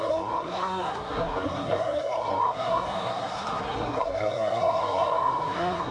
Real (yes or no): no